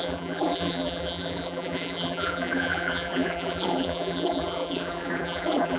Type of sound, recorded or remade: remade